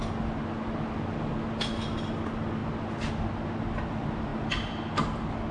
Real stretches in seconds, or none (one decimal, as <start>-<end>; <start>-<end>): 0.0-5.5